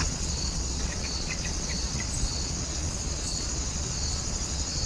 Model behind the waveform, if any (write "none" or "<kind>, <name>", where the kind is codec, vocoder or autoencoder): vocoder, Vocos